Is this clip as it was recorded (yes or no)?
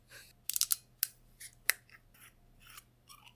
yes